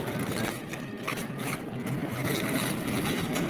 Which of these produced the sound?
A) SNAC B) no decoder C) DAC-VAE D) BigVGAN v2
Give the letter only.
B